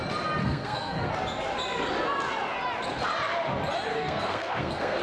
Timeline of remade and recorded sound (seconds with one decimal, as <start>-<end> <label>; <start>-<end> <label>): 0.0-0.4 recorded; 0.4-1.1 remade; 1.1-3.9 recorded; 3.9-5.0 remade